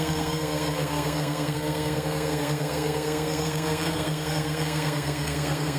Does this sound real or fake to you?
fake